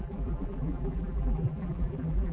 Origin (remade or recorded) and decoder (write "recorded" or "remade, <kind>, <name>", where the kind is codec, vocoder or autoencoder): remade, vocoder, BigVGAN v2